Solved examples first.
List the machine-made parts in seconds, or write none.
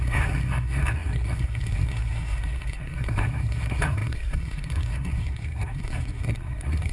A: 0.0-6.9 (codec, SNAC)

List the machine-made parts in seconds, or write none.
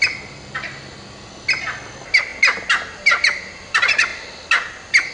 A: none